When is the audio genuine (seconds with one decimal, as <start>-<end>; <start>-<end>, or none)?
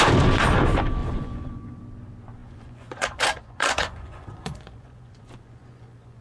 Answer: 0.0-1.0; 1.8-2.4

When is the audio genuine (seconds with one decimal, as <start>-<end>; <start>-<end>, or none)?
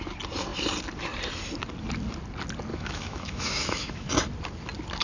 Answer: 0.0-2.7; 4.1-5.0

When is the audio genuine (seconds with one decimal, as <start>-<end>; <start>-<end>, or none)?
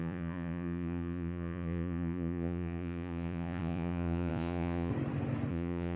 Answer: 4.9-5.5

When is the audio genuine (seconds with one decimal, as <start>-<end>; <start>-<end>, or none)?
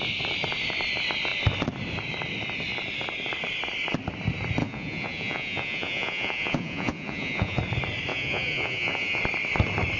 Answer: 0.0-4.6; 7.6-8.1; 9.2-10.0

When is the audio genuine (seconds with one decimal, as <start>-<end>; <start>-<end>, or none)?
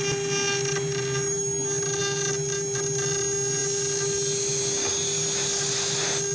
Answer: 0.0-6.3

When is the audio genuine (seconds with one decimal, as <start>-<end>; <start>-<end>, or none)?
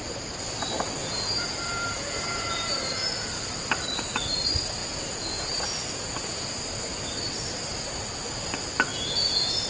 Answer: 0.0-1.0; 3.3-4.8; 6.6-8.9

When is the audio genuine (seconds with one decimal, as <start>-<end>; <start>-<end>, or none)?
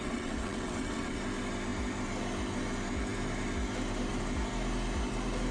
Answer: 1.2-5.5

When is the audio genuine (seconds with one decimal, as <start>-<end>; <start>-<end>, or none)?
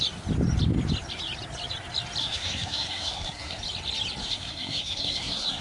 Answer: 0.0-2.2; 3.6-4.2